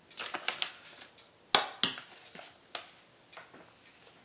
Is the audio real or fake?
real